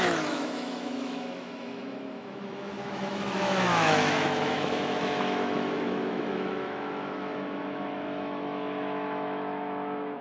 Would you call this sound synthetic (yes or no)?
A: yes